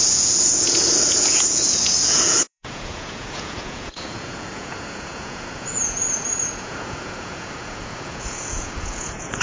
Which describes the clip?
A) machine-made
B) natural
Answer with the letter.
A